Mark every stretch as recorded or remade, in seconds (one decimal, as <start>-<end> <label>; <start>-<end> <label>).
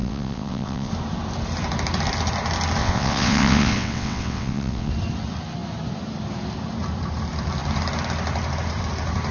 0.0-0.9 remade; 0.9-2.8 recorded; 2.8-4.9 remade; 4.9-9.3 recorded